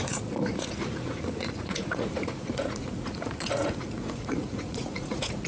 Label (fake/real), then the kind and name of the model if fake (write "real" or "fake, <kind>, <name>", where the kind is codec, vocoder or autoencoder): fake, vocoder, Vocos